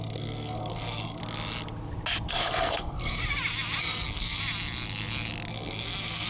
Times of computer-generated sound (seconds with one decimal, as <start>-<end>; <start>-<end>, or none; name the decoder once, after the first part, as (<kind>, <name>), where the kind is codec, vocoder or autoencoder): 0.0-1.2 (codec, SNAC); 2.3-3.2; 3.8-4.4; 5.5-6.3